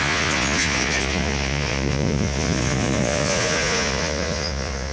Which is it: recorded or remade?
remade